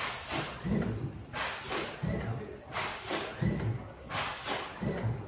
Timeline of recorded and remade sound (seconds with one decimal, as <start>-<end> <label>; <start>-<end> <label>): 0.0-5.3 recorded